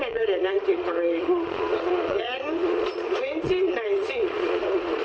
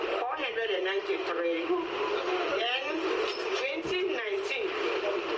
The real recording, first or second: second